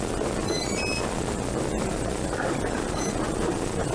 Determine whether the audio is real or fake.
real